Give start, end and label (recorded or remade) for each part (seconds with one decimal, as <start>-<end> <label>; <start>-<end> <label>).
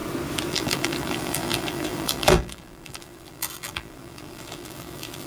0.0-0.5 recorded; 0.5-5.3 remade